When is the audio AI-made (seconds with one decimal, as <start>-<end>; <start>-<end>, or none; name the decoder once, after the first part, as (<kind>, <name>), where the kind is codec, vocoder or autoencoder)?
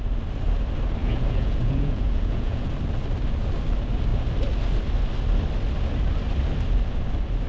1.0-2.7 (vocoder, Vocos)